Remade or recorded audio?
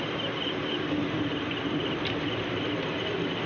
recorded